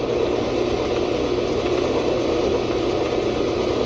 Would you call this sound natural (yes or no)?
yes